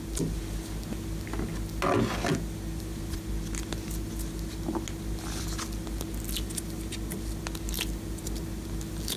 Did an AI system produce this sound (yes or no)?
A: no